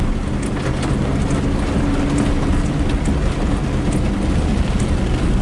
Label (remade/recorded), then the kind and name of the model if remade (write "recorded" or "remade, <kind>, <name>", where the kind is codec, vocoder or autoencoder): recorded